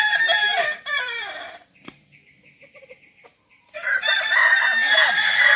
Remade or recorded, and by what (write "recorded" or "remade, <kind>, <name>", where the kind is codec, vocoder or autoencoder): remade, vocoder, BigVGAN v2